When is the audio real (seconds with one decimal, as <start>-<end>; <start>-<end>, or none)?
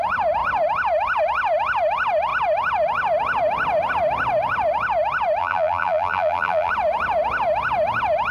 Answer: 0.0-5.4; 6.7-8.3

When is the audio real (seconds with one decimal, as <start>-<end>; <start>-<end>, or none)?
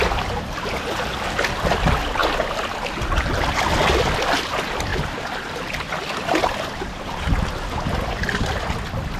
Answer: 0.0-9.2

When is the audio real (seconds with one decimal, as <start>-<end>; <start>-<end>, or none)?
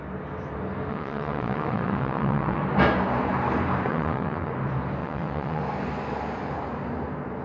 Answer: 0.0-0.9; 2.6-3.9; 4.5-5.0; 5.6-7.4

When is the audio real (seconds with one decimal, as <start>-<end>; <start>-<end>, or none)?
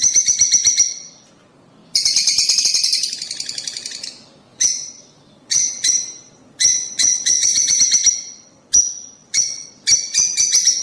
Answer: 0.0-4.5; 5.9-6.7; 7.8-9.2; 9.7-10.8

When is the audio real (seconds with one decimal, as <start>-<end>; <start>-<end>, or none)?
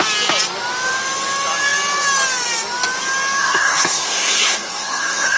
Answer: 0.0-3.4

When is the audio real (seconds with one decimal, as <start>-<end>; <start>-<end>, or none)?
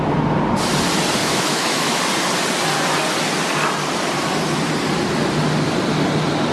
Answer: 0.0-1.2; 2.0-6.5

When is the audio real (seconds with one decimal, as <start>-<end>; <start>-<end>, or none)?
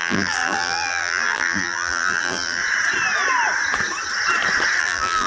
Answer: 2.6-4.8